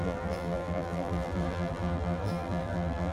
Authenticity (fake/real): fake